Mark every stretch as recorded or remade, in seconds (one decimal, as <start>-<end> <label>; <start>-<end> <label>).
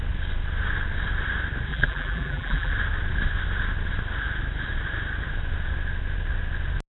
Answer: 0.0-1.7 recorded; 1.7-2.7 remade; 2.7-6.9 recorded